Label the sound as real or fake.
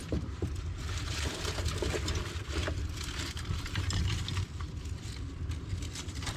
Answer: real